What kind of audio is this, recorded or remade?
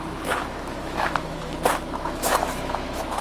remade